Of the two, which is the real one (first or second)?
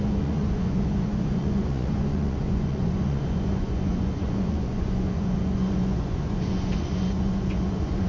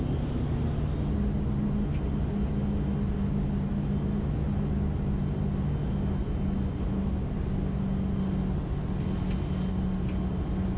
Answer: second